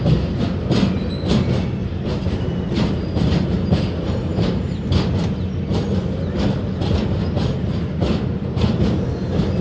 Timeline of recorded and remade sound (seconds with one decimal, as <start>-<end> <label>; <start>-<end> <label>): 0.0-1.8 recorded; 1.8-4.9 remade; 4.9-9.6 recorded